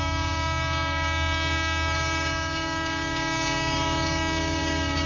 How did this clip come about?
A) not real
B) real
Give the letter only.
A